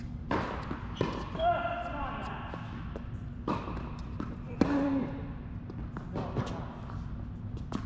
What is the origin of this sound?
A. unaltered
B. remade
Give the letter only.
A